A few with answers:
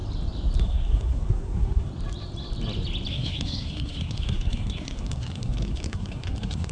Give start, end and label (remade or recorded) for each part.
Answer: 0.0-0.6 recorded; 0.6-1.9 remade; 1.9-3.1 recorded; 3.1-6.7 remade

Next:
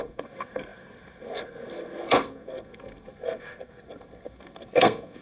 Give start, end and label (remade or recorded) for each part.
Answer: 0.0-5.2 remade

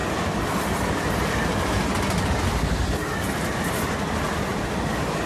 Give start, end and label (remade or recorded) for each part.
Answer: 0.0-5.3 recorded